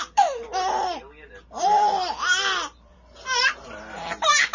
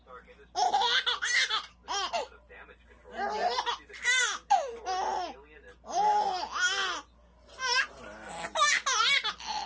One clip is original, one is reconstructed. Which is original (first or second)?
second